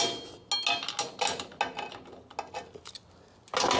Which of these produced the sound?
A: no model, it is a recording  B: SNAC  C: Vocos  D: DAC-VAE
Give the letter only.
A